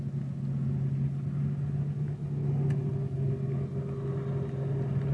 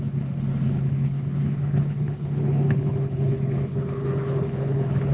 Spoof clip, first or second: second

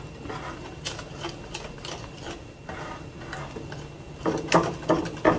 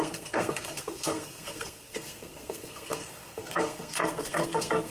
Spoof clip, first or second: second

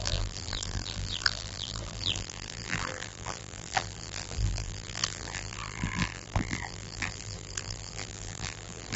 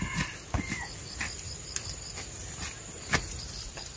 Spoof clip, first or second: first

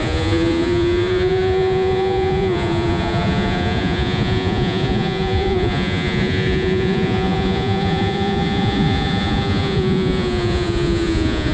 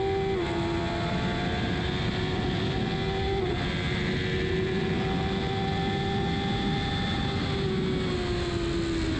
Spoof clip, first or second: first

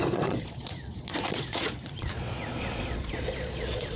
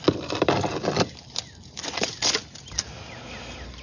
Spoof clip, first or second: first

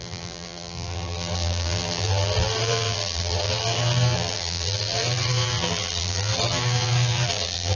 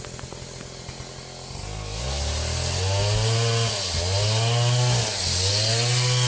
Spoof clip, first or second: first